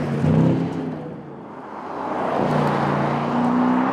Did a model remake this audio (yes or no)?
no